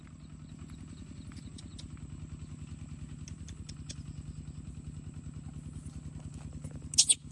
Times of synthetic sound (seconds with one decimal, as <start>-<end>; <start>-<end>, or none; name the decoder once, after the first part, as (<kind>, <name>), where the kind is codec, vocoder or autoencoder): none